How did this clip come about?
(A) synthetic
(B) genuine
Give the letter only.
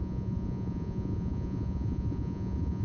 A